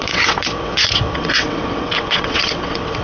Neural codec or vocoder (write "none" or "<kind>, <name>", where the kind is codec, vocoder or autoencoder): vocoder, WaveNeXt